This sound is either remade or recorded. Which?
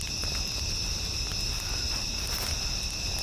recorded